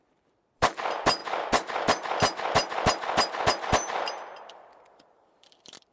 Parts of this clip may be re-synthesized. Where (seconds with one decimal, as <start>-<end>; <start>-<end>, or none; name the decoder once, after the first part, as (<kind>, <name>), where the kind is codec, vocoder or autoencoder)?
0.0-1.2 (vocoder, BigVGAN v2); 3.7-5.9